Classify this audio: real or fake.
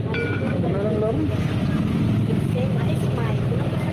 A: real